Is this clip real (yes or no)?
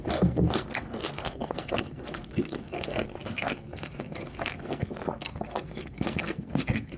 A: no